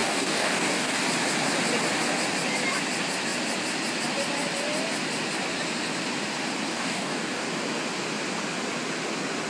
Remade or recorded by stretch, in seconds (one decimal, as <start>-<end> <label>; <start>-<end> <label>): 0.0-1.0 remade; 1.0-6.7 recorded; 6.7-7.5 remade; 7.5-9.5 recorded